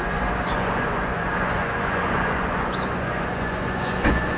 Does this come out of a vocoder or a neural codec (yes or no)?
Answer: yes